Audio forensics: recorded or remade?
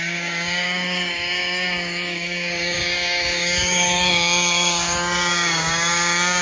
remade